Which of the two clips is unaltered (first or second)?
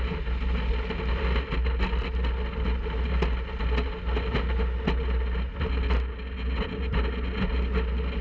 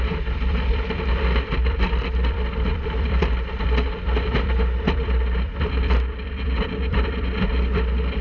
first